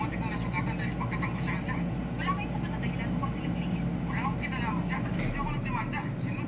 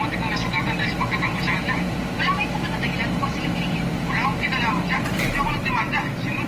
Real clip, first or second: first